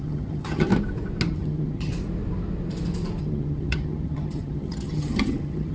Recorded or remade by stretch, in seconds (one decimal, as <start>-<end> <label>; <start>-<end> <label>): 0.0-0.7 remade; 0.7-1.3 recorded; 1.3-1.9 remade; 1.9-3.2 recorded; 3.2-5.7 remade